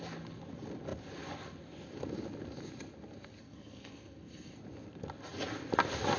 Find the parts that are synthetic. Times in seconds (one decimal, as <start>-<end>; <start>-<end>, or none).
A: 3.4-4.6